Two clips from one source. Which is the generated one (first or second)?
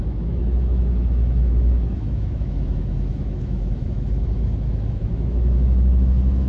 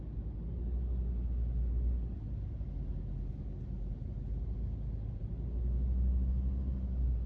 first